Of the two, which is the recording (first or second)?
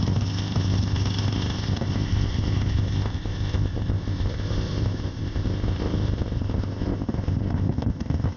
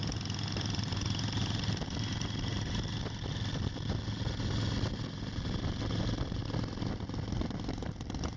second